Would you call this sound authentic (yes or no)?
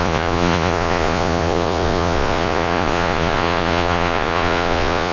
no